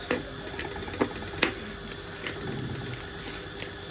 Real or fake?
real